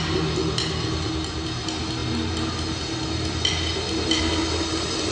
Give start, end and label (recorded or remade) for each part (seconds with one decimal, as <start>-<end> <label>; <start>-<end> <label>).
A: 0.0-5.1 recorded